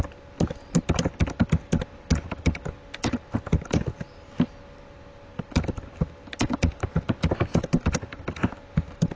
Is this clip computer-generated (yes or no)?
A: no